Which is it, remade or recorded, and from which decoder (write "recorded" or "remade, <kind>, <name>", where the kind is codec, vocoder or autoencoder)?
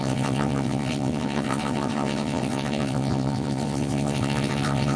remade, vocoder, WaveNeXt